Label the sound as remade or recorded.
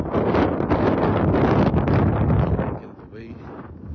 recorded